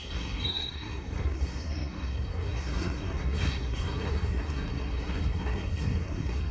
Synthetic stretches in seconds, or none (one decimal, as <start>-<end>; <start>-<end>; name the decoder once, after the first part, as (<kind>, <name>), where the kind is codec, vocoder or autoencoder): 0.0-6.5 (codec, SNAC)